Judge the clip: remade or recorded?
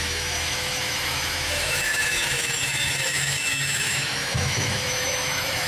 remade